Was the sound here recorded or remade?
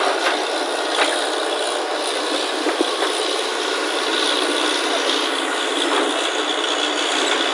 recorded